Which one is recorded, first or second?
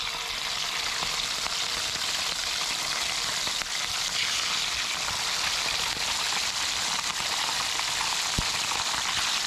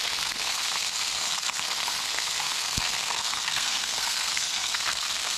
first